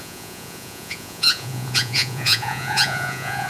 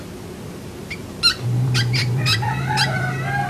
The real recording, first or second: second